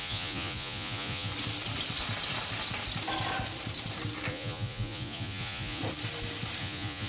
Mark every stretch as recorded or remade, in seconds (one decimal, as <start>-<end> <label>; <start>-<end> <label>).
0.0-1.3 remade; 1.3-4.3 recorded; 4.3-5.8 remade; 5.8-6.6 recorded; 6.6-7.1 remade

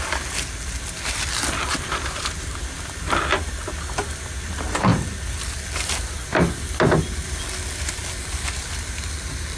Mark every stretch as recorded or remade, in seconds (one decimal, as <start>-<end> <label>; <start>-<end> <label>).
0.0-9.6 recorded

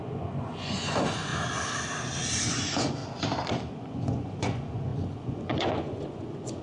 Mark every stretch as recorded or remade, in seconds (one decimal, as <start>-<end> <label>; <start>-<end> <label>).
0.0-1.3 remade; 1.3-2.5 recorded; 2.5-3.0 remade; 3.0-3.7 recorded; 3.7-6.6 remade